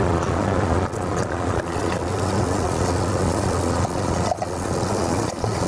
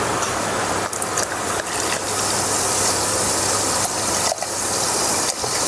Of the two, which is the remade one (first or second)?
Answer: first